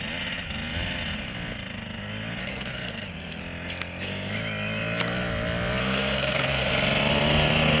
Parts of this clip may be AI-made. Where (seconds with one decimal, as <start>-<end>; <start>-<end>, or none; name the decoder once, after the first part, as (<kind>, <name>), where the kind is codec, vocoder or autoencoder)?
2.4-3.4 (codec, SNAC); 5.8-6.7